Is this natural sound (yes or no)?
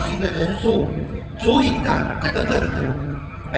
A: no